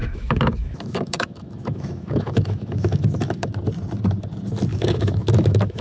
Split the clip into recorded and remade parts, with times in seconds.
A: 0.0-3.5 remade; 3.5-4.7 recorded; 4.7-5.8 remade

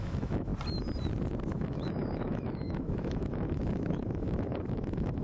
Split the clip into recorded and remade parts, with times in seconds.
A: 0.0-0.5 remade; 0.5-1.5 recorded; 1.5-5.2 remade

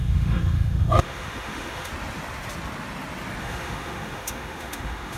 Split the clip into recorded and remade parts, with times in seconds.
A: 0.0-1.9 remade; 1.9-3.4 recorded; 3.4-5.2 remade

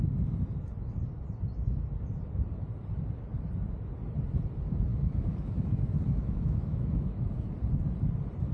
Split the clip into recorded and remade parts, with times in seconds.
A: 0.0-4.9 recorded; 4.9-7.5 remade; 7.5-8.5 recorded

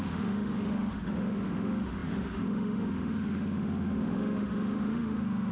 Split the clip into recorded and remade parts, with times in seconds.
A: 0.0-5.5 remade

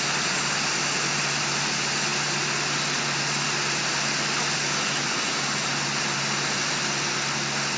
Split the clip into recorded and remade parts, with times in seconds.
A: 0.0-7.8 recorded

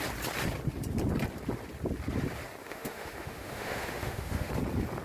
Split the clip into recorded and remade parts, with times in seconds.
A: 0.0-2.6 recorded; 2.6-4.5 remade; 4.5-5.0 recorded

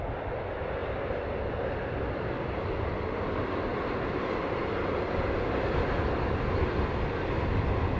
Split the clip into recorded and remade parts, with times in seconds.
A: 0.0-8.0 recorded